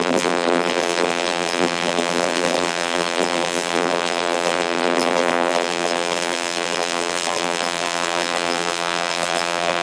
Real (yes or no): no